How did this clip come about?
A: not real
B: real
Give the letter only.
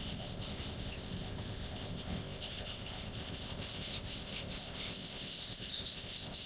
A